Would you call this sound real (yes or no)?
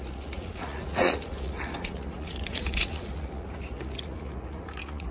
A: no